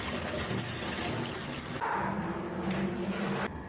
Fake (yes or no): no